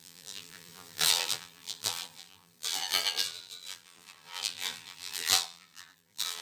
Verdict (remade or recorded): remade